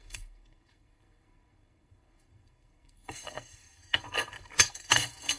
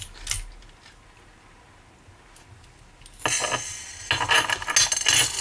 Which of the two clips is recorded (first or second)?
second